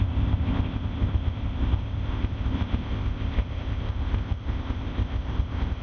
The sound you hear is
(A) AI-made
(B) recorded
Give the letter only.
A